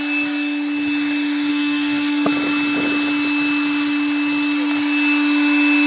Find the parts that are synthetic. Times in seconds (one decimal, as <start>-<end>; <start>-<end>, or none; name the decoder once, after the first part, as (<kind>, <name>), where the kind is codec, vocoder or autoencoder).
1.5-2.3 (codec, SNAC)